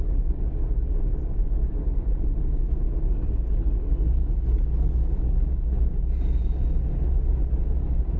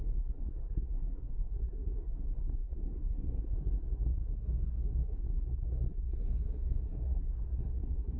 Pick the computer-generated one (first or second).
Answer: second